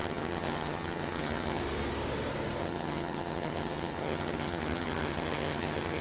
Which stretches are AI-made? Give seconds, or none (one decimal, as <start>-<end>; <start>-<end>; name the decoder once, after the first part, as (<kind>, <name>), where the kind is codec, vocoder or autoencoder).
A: 0.0-1.6 (vocoder, HiFi-GAN); 2.6-6.0